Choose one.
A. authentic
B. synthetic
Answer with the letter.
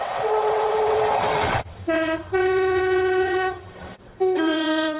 B